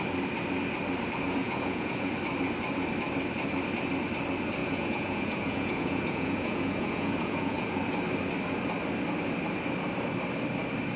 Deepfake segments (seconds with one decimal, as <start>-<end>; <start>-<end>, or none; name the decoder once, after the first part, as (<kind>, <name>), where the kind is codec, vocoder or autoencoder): 1.4-2.1 (vocoder, Vocos); 4.6-7.7

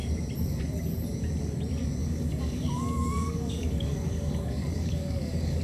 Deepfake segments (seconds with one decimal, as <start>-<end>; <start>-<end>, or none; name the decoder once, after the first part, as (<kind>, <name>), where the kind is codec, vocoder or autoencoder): 2.0-5.6 (codec, DAC)

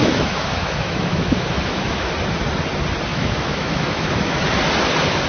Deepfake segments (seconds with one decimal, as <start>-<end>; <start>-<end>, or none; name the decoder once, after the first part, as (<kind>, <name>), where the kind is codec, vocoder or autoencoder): 0.0-2.1 (autoencoder, DAC-VAE); 3.1-4.4

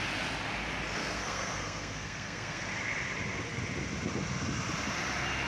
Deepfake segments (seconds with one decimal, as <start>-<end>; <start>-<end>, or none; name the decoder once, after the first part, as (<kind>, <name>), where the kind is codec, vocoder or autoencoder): 1.0-2.6 (codec, SNAC)

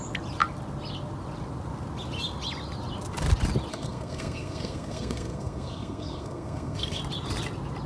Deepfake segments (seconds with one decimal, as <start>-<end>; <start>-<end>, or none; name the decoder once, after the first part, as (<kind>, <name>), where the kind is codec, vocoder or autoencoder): 3.7-7.0 (codec, SNAC)

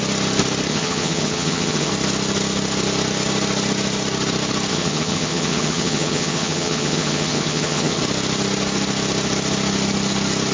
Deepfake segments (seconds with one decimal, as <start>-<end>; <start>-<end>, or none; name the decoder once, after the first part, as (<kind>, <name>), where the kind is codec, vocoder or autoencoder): 0.7-1.9 (vocoder, HiFi-GAN); 4.7-8.0

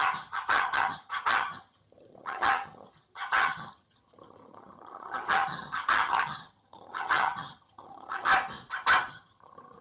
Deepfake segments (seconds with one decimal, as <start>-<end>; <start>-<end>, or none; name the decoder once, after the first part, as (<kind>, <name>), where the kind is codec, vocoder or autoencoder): 0.0-8.3 (vocoder, HiFi-GAN); 9.1-9.8

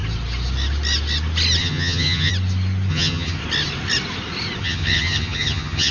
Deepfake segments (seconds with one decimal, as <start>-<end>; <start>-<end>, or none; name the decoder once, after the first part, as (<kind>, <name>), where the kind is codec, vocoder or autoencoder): 1.6-2.3 (vocoder, HiFi-GAN); 2.9-3.4; 4.6-5.9